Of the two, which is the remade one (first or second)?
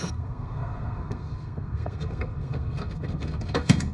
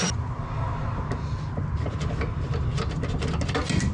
first